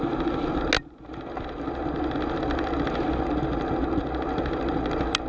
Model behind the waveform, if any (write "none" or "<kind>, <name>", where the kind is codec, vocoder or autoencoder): none